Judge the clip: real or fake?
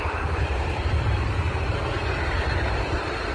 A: real